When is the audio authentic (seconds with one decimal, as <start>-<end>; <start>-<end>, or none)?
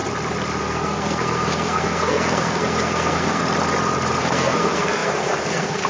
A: 0.0-0.6; 3.4-4.2